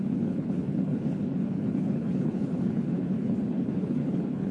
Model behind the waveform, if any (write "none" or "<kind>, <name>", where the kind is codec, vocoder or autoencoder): codec, HILCodec